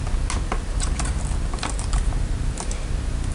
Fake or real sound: real